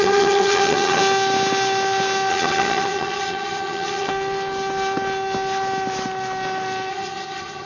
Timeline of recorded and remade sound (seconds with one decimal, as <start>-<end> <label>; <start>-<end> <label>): 0.0-1.0 remade; 1.0-2.3 recorded; 2.3-4.1 remade; 4.1-6.9 recorded; 6.9-7.7 remade